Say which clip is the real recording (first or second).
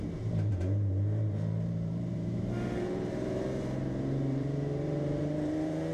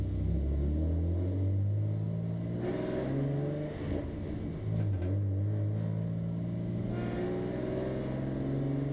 second